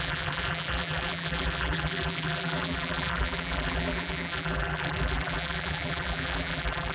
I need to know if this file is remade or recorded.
remade